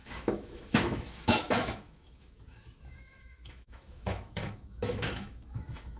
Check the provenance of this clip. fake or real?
fake